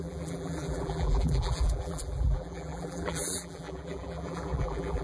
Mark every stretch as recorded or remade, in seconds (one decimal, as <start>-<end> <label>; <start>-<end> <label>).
0.0-5.0 remade